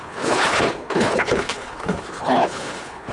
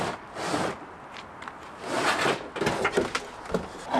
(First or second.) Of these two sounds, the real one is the second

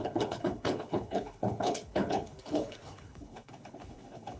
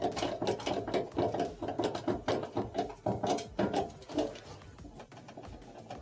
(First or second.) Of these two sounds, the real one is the second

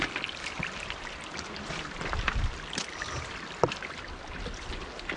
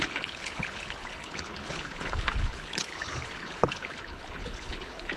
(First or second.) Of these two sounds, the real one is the first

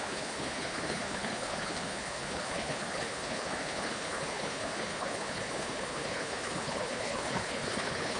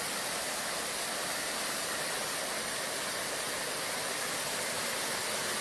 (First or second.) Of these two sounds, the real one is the second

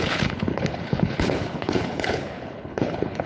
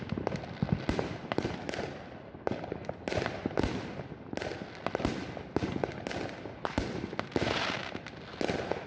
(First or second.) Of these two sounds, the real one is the second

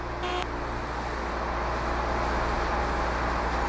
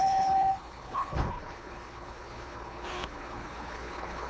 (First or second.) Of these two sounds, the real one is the first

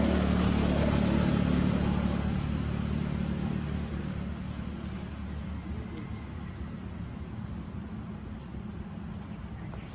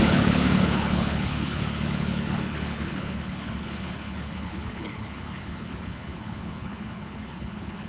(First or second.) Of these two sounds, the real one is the first